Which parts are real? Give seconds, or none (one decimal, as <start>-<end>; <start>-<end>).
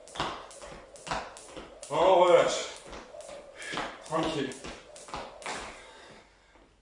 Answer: 0.0-3.8; 4.7-5.5; 6.3-6.8